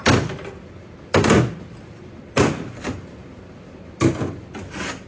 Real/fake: real